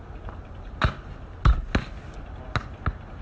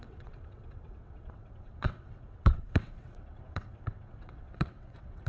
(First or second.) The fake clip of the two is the second